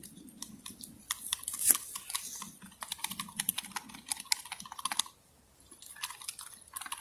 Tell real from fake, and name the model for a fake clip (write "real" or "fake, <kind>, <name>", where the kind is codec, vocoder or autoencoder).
real